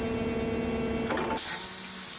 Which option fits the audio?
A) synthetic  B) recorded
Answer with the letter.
B